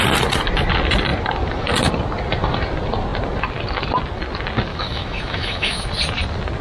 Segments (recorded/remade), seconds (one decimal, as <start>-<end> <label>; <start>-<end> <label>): 0.0-4.7 recorded; 4.7-5.9 remade; 5.9-6.6 recorded